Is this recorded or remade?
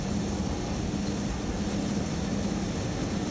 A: recorded